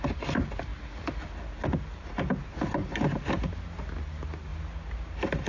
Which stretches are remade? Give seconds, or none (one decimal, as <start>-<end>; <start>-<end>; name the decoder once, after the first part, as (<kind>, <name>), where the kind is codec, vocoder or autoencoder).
none